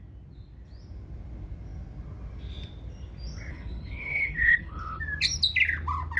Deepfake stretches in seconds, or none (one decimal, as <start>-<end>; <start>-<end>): 3.5-5.0

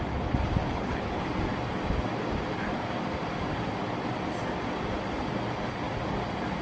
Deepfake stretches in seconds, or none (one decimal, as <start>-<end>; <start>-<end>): 0.6-1.2

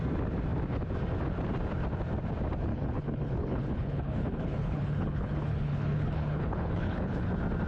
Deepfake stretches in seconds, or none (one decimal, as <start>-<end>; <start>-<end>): 2.7-7.3